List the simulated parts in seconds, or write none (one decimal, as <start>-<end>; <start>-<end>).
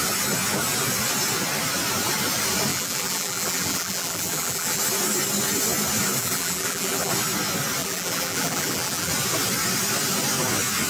2.7-4.8; 6.2-7.1; 7.8-9.1